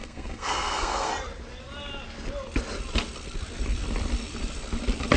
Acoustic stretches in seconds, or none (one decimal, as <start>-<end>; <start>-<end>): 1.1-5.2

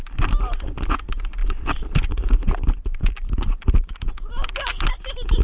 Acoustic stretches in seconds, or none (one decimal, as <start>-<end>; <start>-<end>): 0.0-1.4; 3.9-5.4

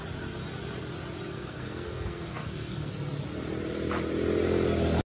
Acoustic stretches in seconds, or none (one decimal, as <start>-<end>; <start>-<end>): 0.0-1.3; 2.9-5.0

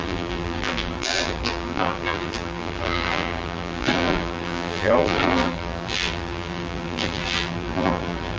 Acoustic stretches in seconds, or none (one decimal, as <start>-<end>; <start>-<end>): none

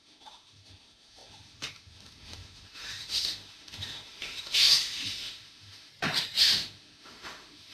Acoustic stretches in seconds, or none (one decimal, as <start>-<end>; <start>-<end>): 5.9-6.4

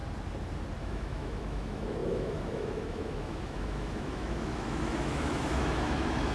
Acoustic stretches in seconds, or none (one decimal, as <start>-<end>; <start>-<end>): 0.0-0.8